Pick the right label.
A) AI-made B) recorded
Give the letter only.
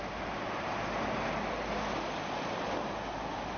B